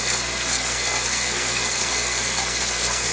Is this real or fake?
fake